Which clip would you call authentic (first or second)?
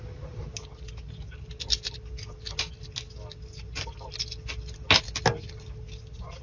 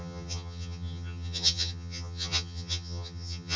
first